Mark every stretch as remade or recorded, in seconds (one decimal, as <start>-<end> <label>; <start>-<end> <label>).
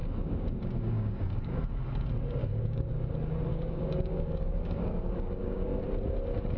0.0-1.6 remade; 1.6-2.4 recorded; 2.4-2.9 remade; 2.9-3.5 recorded; 3.5-5.8 remade; 5.8-6.6 recorded